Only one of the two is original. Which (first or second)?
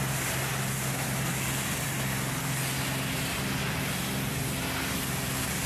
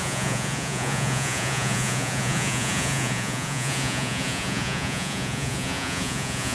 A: first